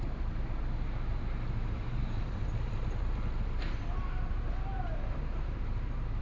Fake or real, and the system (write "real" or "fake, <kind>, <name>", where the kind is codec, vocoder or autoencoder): fake, vocoder, BigVGAN v2